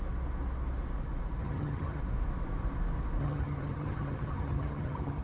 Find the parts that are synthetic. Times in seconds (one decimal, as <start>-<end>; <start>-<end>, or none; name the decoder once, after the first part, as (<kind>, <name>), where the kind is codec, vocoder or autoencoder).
1.4-2.0 (vocoder, HiFi-GAN); 3.2-5.2